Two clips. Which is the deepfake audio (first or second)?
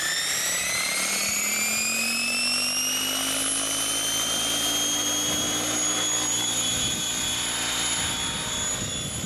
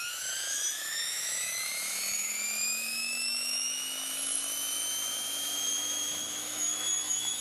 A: second